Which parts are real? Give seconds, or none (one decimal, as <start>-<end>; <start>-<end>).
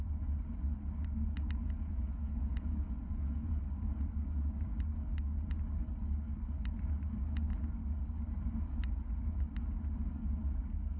0.0-1.6; 3.6-11.0